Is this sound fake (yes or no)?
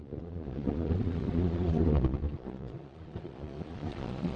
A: yes